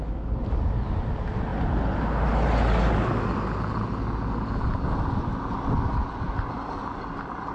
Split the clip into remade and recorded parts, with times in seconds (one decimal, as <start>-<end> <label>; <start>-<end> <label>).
0.0-7.5 recorded